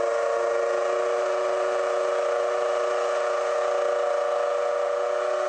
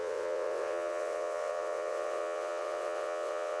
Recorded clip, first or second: first